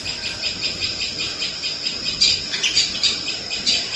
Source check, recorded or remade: remade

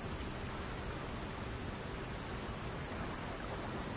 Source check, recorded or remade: recorded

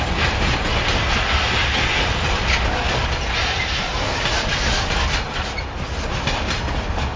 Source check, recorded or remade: recorded